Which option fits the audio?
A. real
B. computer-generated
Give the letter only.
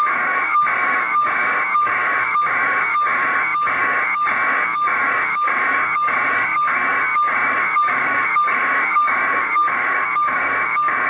B